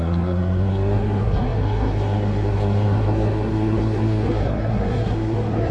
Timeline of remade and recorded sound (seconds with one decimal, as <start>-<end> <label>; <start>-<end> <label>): 0.0-5.7 remade